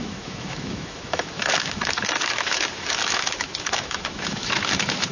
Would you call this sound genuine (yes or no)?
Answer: no